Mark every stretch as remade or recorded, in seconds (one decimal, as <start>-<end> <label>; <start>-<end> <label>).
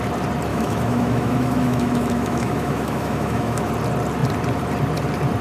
0.0-0.5 recorded; 0.5-3.7 remade; 3.7-5.4 recorded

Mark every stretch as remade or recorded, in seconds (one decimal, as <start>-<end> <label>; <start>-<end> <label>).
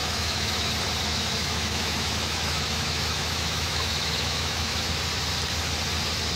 0.0-0.7 remade; 0.7-1.1 recorded; 1.1-4.9 remade; 4.9-6.4 recorded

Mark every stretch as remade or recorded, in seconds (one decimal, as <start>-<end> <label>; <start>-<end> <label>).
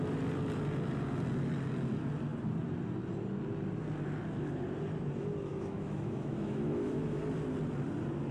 0.0-5.5 recorded; 5.5-7.2 remade; 7.2-8.3 recorded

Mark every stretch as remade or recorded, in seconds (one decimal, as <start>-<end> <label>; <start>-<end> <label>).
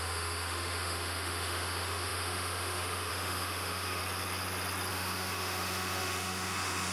0.0-4.0 remade; 4.0-4.9 recorded; 4.9-6.9 remade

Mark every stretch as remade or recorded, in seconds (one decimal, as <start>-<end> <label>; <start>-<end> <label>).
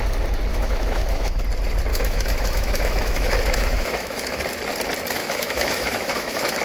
0.0-0.5 recorded; 0.5-1.4 remade; 1.4-1.9 recorded; 1.9-4.4 remade; 4.4-5.2 recorded; 5.2-6.6 remade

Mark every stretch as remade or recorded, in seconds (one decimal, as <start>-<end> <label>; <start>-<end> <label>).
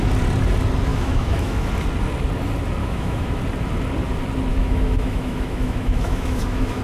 0.0-0.9 recorded; 0.9-1.7 remade; 1.7-2.8 recorded; 2.8-3.4 remade; 3.4-4.5 recorded; 4.5-6.8 remade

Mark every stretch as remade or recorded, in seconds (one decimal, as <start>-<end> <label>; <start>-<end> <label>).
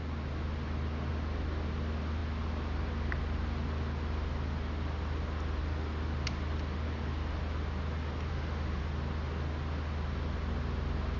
0.0-8.3 recorded; 8.3-8.8 remade; 8.8-11.2 recorded